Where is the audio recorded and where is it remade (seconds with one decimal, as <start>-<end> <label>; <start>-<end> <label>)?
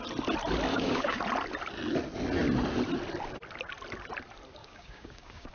0.0-0.7 recorded; 0.7-1.2 remade; 1.2-4.6 recorded; 4.6-5.5 remade